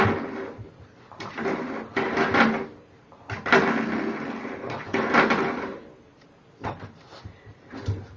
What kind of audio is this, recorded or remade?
recorded